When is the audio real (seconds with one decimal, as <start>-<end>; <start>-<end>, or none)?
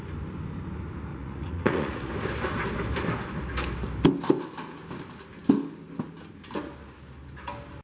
0.0-1.1; 2.1-7.8